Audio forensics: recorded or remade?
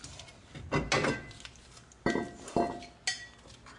recorded